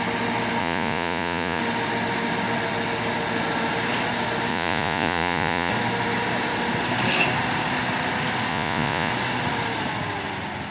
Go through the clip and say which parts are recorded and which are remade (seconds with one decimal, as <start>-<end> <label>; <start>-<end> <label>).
0.0-0.6 recorded; 0.6-1.6 remade; 1.6-4.5 recorded; 4.5-5.7 remade; 5.7-8.5 recorded; 8.5-9.1 remade; 9.1-10.7 recorded